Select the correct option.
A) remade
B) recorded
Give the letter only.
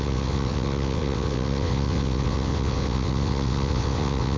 A